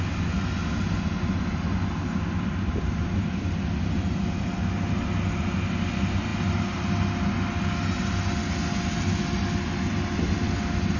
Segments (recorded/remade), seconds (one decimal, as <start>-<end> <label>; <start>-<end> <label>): 0.0-11.0 recorded